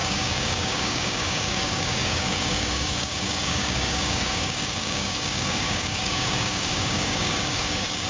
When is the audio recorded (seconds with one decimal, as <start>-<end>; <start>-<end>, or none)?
none